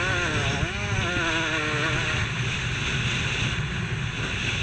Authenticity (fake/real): real